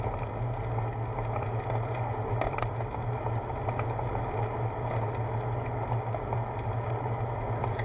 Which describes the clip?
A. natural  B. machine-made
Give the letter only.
A